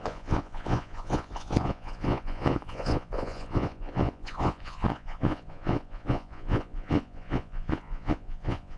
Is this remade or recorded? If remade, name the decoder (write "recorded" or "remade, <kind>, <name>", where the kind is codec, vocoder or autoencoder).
remade, vocoder, Vocos